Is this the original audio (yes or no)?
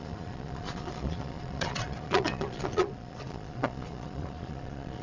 no